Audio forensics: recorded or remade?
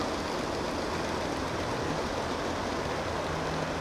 recorded